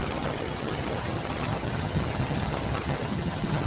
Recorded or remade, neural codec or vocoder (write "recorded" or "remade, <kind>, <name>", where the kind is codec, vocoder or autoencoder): remade, vocoder, HiFi-GAN